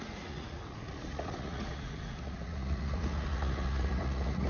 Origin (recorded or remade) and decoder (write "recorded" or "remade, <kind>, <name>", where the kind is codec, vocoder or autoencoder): remade, vocoder, Vocos